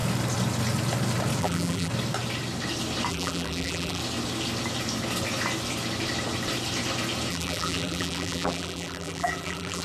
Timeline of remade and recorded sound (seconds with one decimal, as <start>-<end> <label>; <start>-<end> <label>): 0.0-1.4 recorded; 1.4-1.9 remade; 1.9-3.1 recorded; 3.1-4.0 remade; 4.0-7.3 recorded; 7.3-9.8 remade